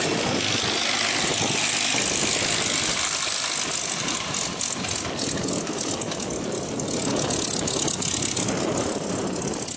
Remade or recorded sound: recorded